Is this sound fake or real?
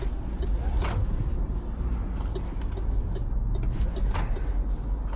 real